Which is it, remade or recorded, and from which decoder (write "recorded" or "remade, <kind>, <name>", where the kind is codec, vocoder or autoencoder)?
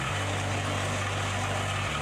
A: recorded